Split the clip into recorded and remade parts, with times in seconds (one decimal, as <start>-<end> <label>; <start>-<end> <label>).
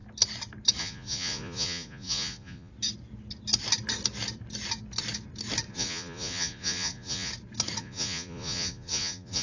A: 0.0-0.8 recorded; 0.8-2.7 remade; 2.7-5.7 recorded; 5.7-7.3 remade; 7.3-7.8 recorded; 7.8-9.4 remade